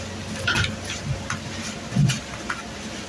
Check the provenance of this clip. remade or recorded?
recorded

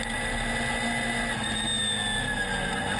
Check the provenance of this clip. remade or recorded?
recorded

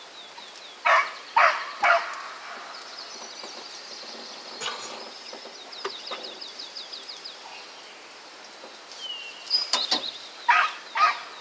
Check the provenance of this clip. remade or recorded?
recorded